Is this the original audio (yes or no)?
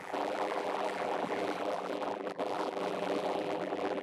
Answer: no